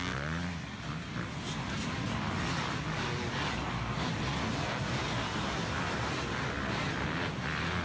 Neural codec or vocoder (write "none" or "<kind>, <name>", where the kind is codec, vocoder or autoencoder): none